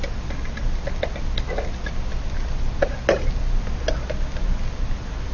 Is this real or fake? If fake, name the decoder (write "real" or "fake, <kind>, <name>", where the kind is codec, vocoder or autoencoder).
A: real